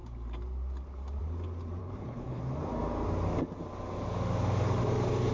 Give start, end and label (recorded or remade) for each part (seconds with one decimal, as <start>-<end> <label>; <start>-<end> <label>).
0.0-1.8 recorded; 1.8-2.4 remade; 2.4-5.3 recorded